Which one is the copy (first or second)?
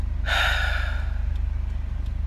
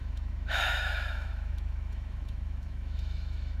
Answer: second